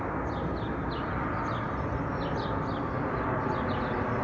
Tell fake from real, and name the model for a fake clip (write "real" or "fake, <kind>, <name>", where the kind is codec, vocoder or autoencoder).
real